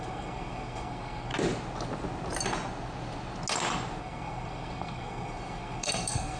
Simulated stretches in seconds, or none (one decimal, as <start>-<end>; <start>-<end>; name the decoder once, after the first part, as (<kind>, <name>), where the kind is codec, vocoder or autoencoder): 0.0-1.3 (codec, SNAC); 4.0-6.4